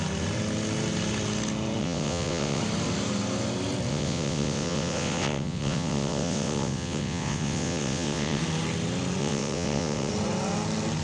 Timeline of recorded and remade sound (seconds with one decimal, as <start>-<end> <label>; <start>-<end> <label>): 0.0-1.8 recorded; 1.8-2.6 remade; 2.6-3.9 recorded; 3.9-8.4 remade; 8.4-9.2 recorded; 9.2-10.1 remade; 10.1-11.0 recorded